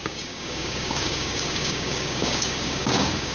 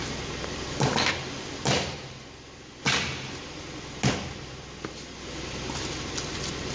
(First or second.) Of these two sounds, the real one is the second